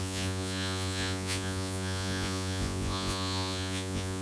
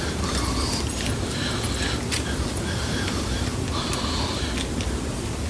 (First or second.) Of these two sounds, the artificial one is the first